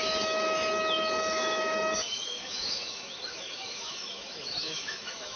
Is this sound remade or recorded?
remade